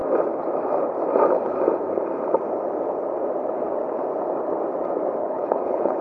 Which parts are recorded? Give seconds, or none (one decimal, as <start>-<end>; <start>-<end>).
0.0-5.2